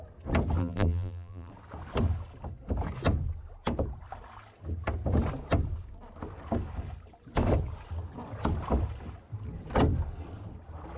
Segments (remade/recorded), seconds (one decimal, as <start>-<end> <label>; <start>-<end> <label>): 0.0-0.6 recorded; 0.6-1.5 remade; 1.5-11.0 recorded